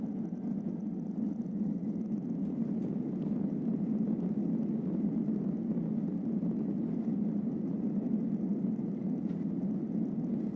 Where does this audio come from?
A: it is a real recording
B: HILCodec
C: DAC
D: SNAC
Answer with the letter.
A